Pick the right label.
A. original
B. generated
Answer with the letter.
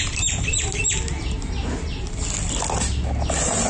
A